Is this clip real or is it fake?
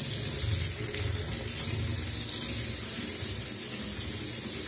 real